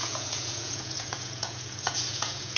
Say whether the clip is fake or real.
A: fake